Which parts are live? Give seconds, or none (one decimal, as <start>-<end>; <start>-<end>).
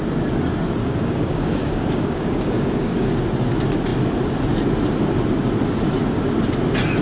0.0-0.8; 3.1-7.0